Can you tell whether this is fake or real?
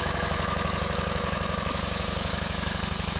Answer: fake